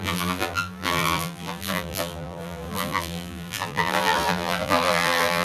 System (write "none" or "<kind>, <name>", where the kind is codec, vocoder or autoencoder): vocoder, BigVGAN v2